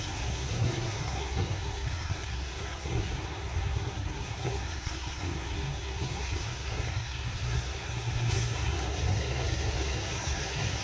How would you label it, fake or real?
fake